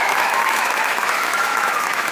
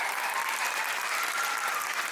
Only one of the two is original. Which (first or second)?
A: second